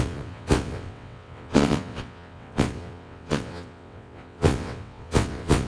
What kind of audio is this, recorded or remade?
remade